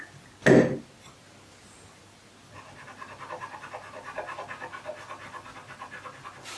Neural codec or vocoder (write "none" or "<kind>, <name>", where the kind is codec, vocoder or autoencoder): none